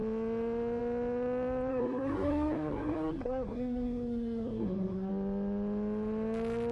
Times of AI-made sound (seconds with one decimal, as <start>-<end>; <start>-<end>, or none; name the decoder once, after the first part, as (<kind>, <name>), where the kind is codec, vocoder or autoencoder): 1.7-5.1 (codec, SNAC)